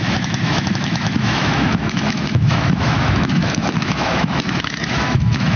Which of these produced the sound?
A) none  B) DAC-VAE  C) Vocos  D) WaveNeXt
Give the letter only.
B